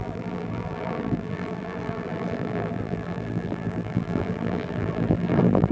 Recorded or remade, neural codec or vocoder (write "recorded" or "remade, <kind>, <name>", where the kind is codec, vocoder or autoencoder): remade, vocoder, BigVGAN v2